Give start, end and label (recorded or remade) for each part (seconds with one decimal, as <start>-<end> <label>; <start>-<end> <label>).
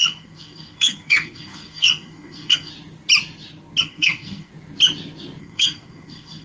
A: 0.0-2.7 remade; 2.7-3.8 recorded; 3.8-4.5 remade; 4.5-5.4 recorded; 5.4-6.4 remade